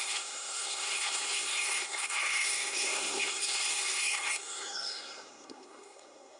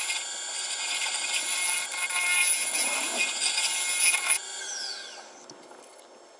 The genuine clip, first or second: second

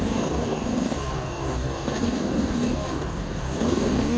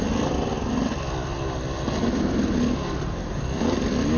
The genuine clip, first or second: second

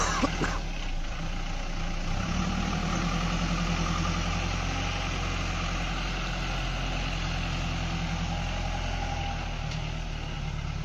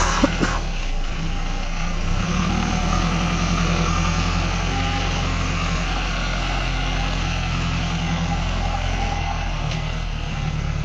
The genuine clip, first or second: first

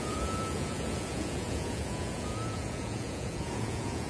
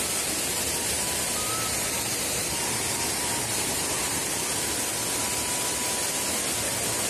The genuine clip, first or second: second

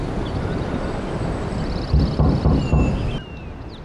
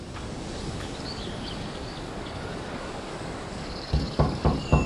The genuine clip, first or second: first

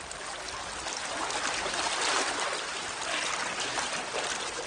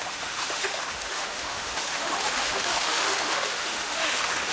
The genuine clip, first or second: first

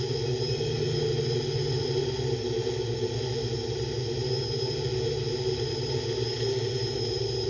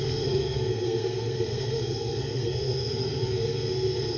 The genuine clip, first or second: first